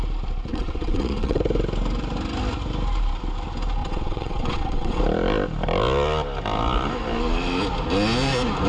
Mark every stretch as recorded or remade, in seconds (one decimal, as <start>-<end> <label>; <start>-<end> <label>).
0.0-0.5 recorded; 0.5-1.4 remade; 1.4-3.8 recorded; 3.8-5.0 remade; 5.0-8.7 recorded